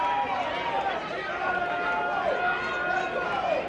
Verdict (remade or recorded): recorded